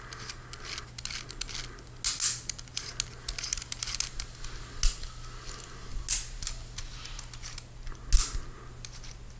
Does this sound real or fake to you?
real